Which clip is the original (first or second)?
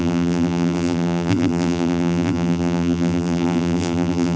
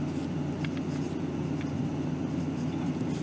second